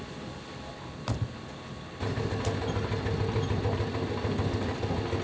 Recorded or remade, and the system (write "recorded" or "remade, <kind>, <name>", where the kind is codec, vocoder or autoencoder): recorded